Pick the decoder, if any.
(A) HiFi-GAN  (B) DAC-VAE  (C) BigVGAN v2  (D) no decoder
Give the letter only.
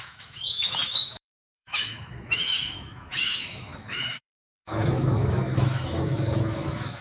B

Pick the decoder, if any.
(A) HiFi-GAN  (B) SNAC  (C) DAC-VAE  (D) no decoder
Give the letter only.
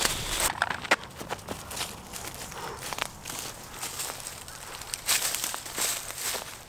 D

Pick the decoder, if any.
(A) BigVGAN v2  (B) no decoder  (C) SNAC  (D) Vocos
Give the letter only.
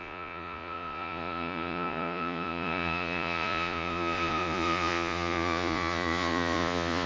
D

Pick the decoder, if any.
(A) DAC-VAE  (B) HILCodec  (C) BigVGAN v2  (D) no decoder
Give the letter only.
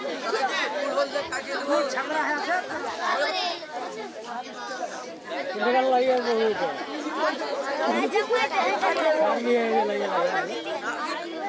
D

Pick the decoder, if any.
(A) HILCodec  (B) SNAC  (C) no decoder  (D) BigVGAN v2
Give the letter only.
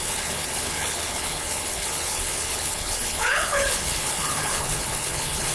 A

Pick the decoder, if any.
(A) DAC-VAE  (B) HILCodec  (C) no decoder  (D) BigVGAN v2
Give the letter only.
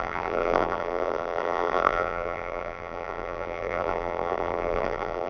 D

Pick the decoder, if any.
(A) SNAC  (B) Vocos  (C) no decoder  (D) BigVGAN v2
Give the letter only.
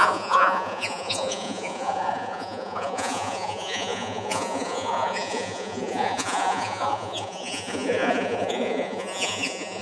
B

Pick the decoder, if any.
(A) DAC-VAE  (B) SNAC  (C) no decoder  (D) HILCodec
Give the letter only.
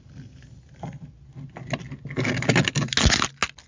C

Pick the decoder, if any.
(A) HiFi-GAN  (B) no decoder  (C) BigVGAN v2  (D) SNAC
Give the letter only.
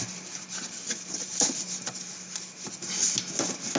B